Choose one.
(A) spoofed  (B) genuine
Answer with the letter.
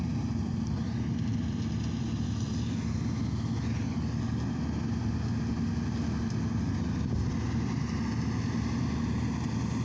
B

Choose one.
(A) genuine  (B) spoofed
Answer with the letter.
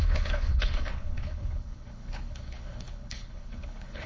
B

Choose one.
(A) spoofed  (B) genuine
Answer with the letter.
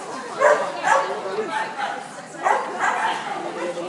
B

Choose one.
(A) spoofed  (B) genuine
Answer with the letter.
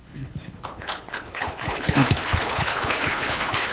A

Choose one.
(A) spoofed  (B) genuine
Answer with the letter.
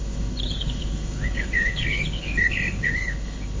A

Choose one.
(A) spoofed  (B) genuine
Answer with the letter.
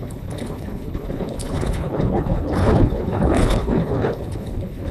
A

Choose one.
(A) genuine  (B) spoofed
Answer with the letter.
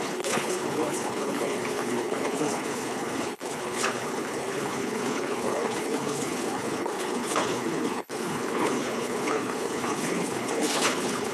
B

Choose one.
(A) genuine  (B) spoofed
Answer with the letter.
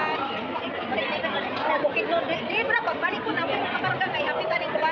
A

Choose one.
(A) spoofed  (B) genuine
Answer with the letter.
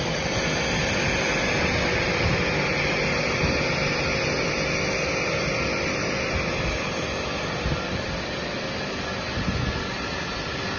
B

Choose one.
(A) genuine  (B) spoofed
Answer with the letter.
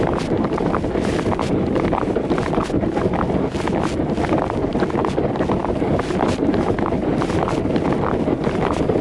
A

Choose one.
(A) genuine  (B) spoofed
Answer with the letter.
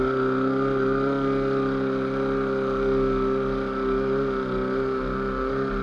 A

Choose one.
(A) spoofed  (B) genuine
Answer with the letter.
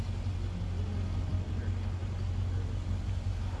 B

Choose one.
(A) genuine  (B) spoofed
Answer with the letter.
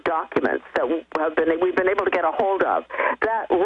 A